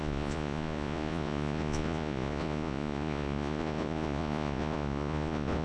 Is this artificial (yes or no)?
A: yes